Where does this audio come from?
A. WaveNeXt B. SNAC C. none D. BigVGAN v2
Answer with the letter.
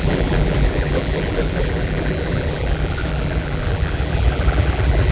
D